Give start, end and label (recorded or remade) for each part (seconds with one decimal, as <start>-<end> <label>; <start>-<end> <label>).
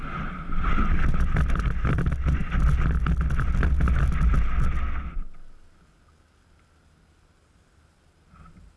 0.0-8.8 recorded